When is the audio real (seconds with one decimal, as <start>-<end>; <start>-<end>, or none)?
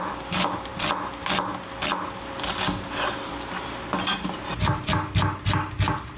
0.0-6.2